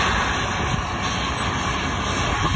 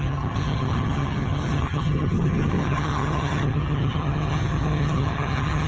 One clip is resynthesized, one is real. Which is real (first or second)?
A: first